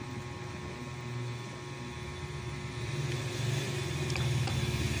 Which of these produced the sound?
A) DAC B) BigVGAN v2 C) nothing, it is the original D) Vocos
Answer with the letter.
C